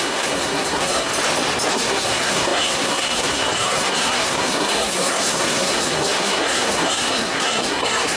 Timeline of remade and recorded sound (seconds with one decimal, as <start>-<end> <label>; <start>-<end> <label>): 0.0-1.1 remade; 1.1-1.7 recorded; 1.7-8.2 remade